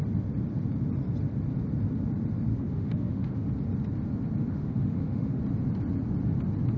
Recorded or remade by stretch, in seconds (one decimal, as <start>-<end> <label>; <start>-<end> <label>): 0.0-2.5 recorded; 2.5-3.5 remade; 3.5-4.5 recorded; 4.5-5.4 remade; 5.4-6.8 recorded